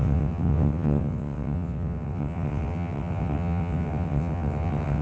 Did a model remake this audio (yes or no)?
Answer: yes